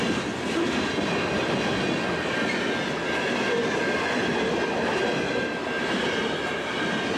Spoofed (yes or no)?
no